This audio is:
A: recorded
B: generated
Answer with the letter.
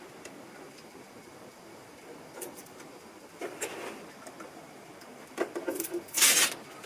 A